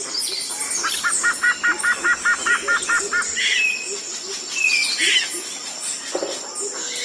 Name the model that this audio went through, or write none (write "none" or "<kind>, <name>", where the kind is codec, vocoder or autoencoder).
none